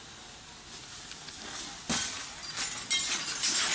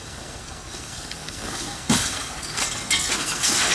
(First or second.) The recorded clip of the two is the first